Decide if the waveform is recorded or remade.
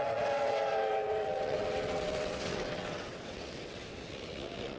remade